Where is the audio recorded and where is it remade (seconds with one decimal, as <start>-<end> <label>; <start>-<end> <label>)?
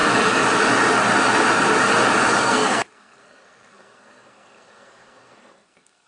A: 0.0-2.4 recorded; 2.4-6.1 remade